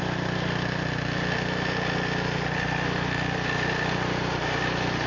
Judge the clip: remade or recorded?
recorded